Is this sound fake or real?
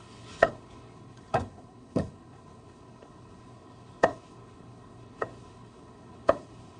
fake